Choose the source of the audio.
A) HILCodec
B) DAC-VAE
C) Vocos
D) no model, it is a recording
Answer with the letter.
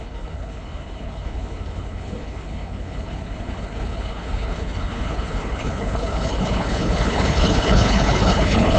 A